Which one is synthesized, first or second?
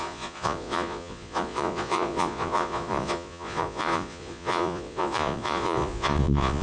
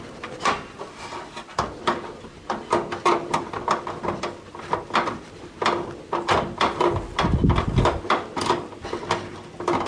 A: first